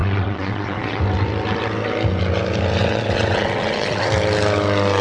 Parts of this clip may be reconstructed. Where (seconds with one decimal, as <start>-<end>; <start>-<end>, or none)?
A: 0.0-1.0; 2.8-4.1